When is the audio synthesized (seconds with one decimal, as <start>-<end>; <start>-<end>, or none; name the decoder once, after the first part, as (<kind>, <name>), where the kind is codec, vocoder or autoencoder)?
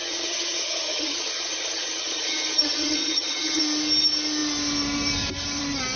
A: 0.0-3.6 (vocoder, HiFi-GAN)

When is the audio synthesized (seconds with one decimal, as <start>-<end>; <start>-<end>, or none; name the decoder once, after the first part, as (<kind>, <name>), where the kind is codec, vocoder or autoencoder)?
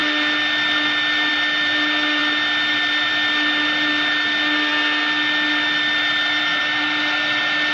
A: none